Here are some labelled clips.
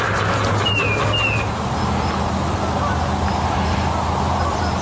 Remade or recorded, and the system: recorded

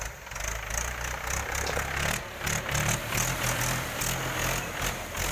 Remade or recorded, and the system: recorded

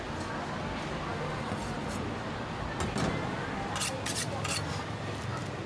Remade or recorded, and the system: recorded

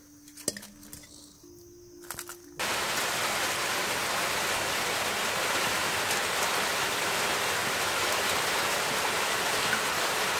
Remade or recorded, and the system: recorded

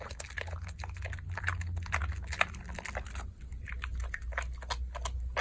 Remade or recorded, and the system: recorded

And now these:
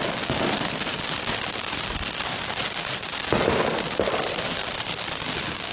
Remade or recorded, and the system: recorded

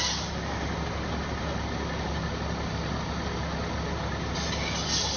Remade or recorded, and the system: recorded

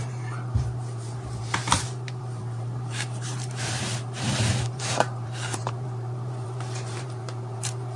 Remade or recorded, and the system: remade, vocoder, BigVGAN v2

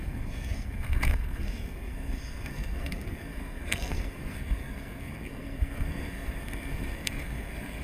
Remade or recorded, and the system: remade, codec, SNAC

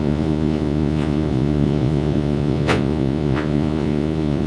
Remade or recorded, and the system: remade, vocoder, Vocos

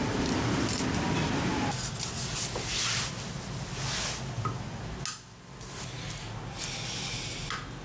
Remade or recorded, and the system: recorded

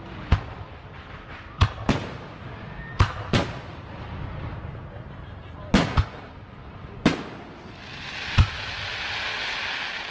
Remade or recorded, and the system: recorded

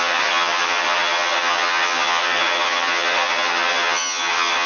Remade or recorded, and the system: remade, vocoder, HiFi-GAN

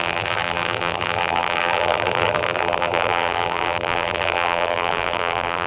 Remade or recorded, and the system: remade, vocoder, BigVGAN v2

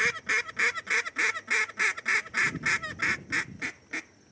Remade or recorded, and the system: recorded